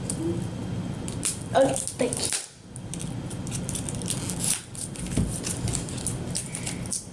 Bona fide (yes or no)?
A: yes